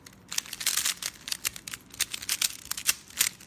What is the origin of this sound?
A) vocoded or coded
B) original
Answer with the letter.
B